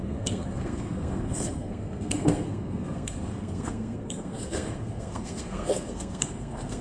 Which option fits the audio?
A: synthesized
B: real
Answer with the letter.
A